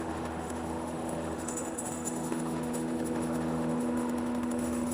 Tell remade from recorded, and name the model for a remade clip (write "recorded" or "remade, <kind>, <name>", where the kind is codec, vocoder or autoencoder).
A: remade, autoencoder, DAC-VAE